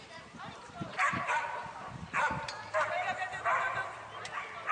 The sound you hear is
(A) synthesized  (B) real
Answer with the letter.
A